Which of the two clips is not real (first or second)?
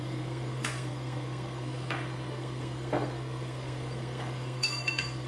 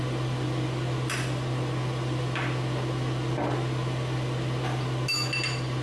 first